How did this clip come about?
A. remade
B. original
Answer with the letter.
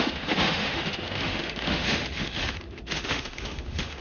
A